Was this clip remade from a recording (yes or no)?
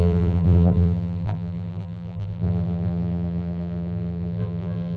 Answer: yes